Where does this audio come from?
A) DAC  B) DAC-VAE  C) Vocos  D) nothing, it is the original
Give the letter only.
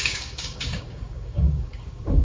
A